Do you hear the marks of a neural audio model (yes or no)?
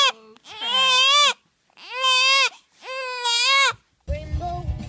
no